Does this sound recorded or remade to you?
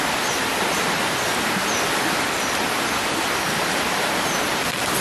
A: recorded